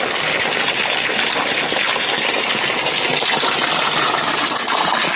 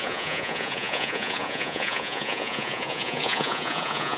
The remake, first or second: second